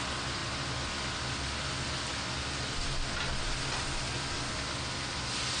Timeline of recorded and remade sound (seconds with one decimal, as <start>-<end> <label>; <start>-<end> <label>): 0.0-5.6 recorded